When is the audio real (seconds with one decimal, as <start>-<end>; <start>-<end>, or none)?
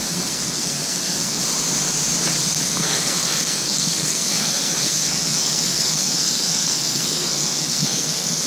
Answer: 1.4-2.6